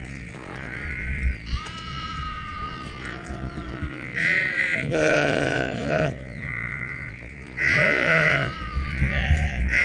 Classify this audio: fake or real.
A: fake